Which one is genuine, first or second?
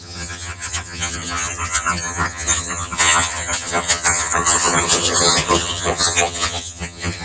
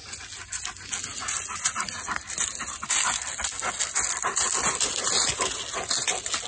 second